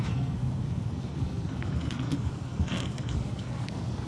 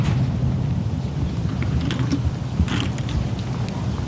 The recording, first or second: second